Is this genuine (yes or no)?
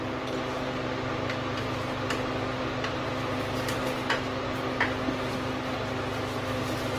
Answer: yes